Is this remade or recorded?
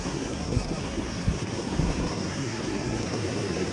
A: remade